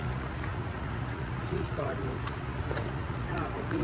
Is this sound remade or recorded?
remade